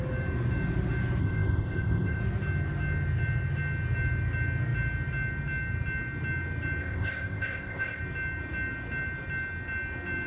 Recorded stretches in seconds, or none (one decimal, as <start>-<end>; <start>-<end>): 0.0-1.2; 2.2-6.8; 8.0-10.3